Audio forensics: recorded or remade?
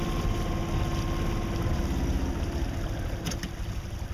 recorded